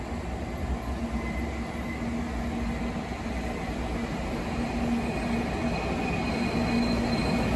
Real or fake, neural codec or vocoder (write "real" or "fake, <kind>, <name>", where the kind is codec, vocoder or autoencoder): real